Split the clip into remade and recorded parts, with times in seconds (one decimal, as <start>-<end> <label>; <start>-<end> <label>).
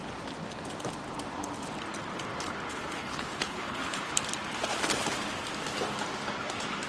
0.0-2.7 recorded; 2.7-4.1 remade; 4.1-6.9 recorded